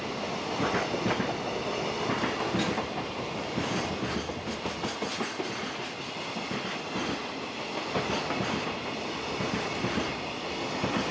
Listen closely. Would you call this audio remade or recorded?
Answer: recorded